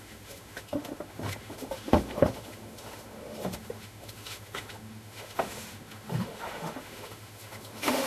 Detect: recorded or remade remade